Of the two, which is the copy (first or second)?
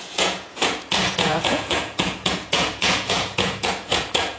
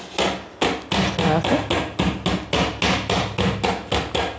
first